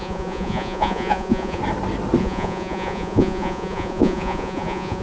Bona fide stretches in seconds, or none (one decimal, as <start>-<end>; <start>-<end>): 1.6-2.2